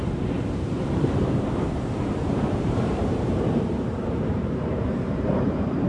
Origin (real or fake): fake